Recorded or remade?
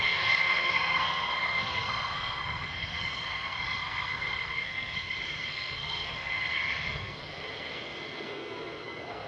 remade